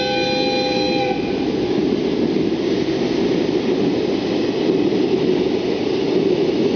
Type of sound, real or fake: real